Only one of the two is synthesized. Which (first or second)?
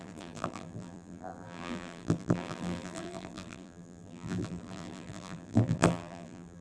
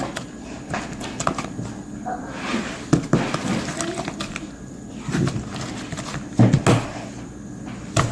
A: first